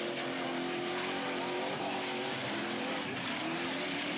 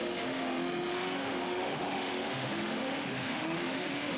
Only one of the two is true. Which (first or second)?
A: first